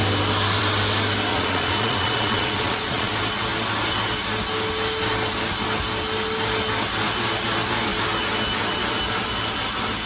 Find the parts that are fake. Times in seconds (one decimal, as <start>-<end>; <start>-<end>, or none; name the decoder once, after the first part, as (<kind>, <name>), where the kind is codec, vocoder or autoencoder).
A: 1.3-3.1 (vocoder, Vocos)